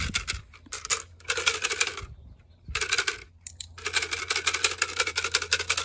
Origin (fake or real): real